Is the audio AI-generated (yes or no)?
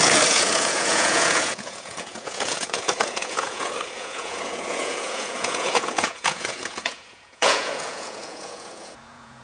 yes